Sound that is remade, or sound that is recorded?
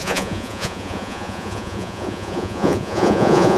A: remade